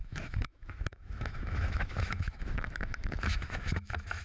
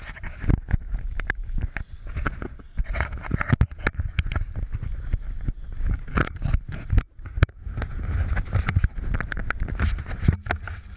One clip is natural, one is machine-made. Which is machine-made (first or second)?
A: first